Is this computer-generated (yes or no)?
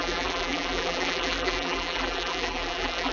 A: yes